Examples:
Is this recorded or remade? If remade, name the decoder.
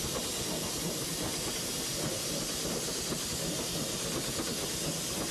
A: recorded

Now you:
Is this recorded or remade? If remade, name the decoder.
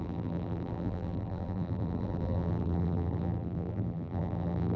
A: remade, vocoder, BigVGAN v2